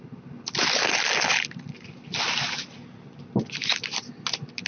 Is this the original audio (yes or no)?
yes